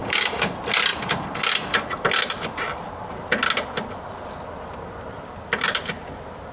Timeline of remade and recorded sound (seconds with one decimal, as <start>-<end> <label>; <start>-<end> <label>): 0.0-0.5 remade; 0.5-6.5 recorded